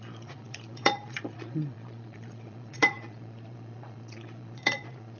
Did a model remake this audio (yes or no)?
yes